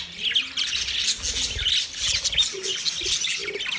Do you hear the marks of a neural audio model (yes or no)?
no